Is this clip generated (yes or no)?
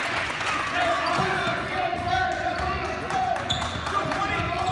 yes